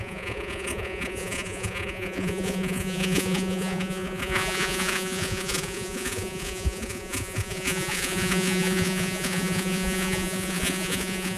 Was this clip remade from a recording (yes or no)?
yes